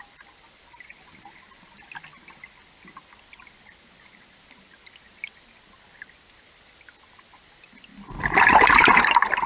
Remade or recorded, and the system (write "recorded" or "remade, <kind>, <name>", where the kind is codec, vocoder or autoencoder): recorded